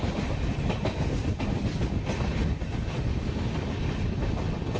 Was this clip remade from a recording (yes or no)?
no